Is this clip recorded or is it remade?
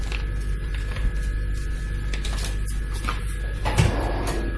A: recorded